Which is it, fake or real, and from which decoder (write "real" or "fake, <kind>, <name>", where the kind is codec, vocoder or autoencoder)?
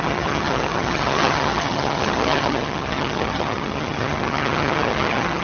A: fake, vocoder, HiFi-GAN